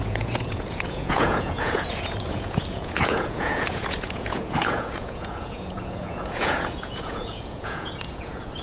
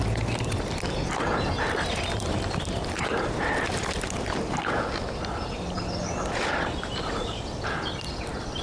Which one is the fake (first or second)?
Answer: first